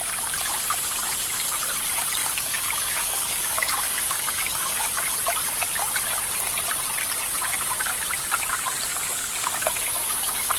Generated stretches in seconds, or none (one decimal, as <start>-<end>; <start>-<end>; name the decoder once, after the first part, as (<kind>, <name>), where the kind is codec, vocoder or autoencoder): 2.2-4.9 (codec, DAC); 8.9-10.6